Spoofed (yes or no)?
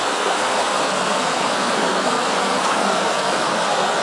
yes